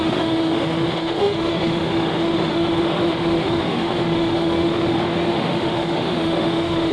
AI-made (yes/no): yes